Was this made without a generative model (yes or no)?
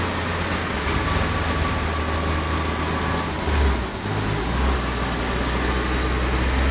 yes